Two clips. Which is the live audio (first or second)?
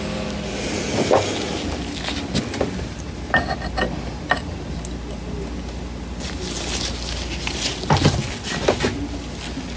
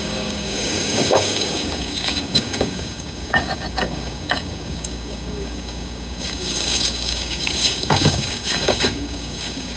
first